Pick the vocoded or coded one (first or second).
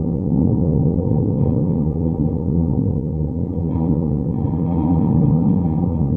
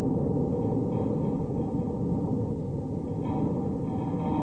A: first